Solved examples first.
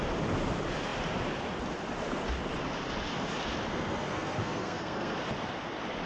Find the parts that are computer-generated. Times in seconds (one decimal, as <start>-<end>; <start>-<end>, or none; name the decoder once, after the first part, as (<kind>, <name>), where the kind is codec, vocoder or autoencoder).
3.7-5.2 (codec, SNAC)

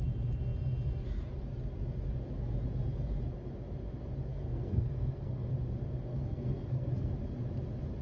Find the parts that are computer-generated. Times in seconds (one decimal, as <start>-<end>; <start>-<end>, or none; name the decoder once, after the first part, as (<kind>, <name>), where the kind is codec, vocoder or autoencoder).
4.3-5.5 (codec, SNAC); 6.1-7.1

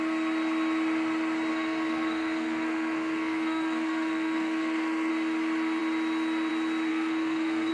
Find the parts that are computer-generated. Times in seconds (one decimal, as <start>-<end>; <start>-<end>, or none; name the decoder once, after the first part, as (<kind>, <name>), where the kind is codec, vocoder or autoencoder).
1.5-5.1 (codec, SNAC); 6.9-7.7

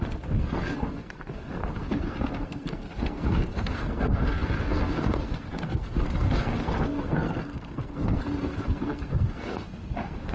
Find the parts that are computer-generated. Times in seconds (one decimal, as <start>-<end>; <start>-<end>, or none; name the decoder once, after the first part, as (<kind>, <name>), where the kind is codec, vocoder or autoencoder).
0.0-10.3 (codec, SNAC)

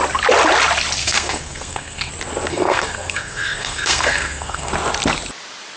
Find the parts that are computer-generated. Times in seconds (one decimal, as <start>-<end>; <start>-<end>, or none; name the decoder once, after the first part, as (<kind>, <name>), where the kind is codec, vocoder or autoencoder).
1.0-2.1 (codec, SNAC); 2.5-4.7

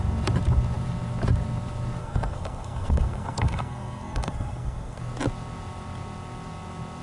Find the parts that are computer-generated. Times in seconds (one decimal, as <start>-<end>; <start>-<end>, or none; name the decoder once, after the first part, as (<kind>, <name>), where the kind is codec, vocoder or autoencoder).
2.0-5.0 (codec, SNAC)

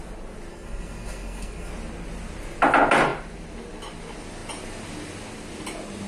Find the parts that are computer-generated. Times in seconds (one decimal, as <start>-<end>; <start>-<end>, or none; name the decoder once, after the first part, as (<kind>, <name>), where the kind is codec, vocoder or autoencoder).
0.5-1.7 (codec, SNAC)

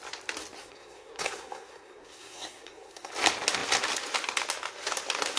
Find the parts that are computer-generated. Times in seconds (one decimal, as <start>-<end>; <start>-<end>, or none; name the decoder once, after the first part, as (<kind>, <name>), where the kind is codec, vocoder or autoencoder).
0.6-3.1 (codec, SNAC)